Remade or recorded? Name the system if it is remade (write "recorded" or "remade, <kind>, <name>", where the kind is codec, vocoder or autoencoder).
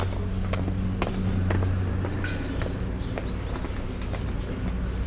recorded